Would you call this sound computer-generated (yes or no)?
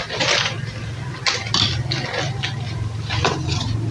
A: yes